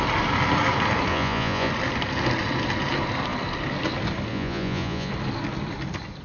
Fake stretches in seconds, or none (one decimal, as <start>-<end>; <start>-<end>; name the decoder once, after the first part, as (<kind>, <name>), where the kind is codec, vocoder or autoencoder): 1.1-1.7 (vocoder, Vocos); 4.3-5.1